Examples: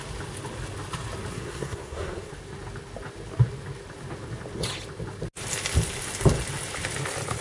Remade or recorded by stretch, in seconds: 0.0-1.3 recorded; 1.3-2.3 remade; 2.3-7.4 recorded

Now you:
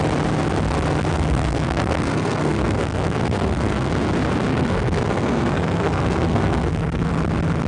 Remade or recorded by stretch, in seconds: 0.0-1.1 recorded; 1.1-3.9 remade; 3.9-4.5 recorded; 4.5-7.1 remade; 7.1-7.7 recorded

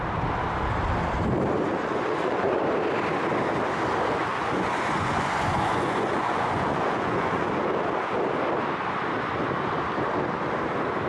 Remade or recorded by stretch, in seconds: 0.0-1.7 recorded; 1.7-2.6 remade; 2.6-4.2 recorded; 4.2-7.5 remade; 7.5-11.1 recorded

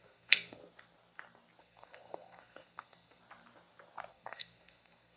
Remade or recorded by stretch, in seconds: 0.0-0.6 remade; 0.6-1.6 recorded; 1.6-3.2 remade; 3.2-4.1 recorded; 4.1-5.2 remade